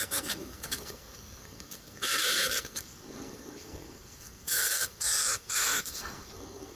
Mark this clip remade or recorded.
remade